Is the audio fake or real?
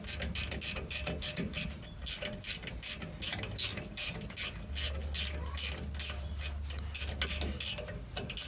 real